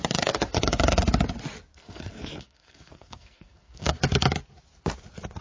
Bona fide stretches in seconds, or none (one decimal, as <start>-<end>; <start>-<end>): 0.0-1.7; 4.0-5.4